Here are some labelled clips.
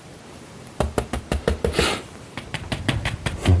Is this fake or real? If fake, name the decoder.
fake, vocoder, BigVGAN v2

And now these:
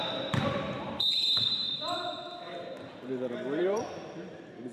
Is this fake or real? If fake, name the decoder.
fake, vocoder, BigVGAN v2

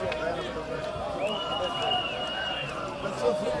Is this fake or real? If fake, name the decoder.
fake, vocoder, BigVGAN v2